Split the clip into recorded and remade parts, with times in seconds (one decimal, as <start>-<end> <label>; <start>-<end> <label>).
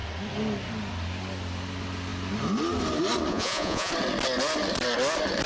0.0-3.3 recorded; 3.3-3.9 remade; 3.9-5.5 recorded